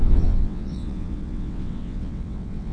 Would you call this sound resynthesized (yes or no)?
yes